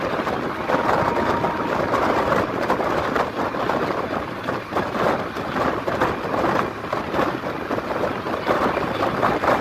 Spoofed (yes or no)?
no